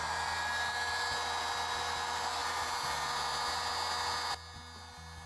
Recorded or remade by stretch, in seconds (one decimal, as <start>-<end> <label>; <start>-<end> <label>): 0.0-5.3 recorded